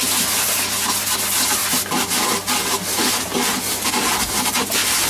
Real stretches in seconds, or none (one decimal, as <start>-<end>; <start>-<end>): 0.0-5.1